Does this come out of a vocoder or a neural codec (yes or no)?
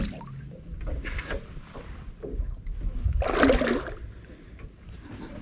no